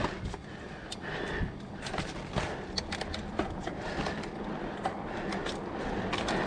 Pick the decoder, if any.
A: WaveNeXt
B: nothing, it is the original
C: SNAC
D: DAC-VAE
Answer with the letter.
B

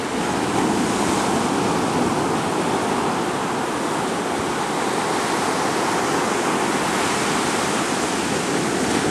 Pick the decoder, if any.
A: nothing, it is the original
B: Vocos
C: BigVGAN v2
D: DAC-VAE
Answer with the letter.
A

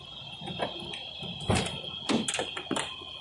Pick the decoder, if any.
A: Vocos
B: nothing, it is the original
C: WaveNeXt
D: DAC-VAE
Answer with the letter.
B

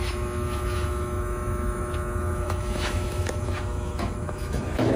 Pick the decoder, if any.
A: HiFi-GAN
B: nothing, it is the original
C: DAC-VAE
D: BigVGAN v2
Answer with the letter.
C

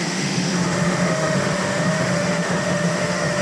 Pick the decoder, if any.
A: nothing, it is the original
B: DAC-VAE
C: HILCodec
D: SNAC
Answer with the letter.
B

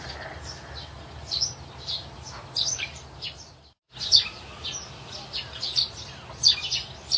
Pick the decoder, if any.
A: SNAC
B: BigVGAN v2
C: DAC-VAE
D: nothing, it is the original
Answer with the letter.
D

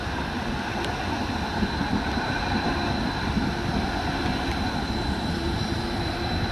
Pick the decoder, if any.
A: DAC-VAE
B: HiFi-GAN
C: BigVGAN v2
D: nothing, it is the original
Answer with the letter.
D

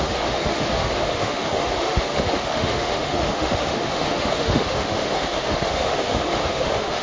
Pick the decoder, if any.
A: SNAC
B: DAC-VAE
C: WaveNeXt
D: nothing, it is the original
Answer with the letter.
B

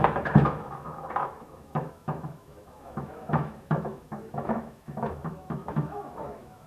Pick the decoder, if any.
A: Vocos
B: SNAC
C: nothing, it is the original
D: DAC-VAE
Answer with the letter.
D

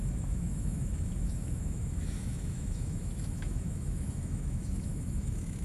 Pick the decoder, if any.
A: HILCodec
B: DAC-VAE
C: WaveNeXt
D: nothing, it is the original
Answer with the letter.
B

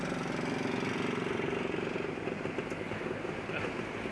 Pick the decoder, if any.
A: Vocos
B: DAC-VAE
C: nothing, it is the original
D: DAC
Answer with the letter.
C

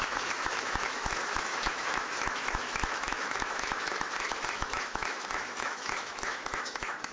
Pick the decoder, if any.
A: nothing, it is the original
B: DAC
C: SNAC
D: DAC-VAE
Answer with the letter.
D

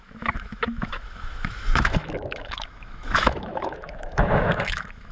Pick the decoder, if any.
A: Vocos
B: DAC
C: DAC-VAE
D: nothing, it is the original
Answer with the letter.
C